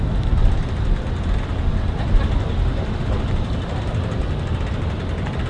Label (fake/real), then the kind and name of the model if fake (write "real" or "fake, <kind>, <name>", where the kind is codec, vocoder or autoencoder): real